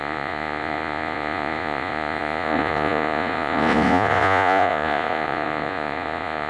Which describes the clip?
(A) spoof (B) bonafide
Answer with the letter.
A